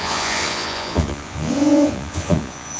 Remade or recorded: remade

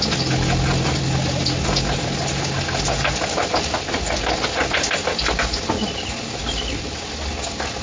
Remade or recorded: recorded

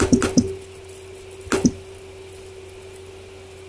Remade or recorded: recorded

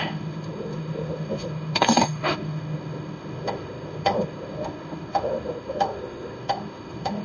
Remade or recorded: remade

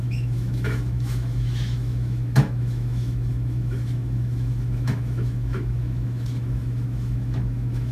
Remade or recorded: remade